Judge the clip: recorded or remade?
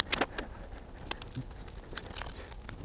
recorded